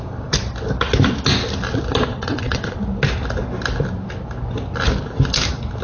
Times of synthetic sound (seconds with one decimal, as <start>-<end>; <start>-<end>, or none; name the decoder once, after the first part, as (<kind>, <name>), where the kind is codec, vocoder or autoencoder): 2.1-2.8 (vocoder, WaveNeXt)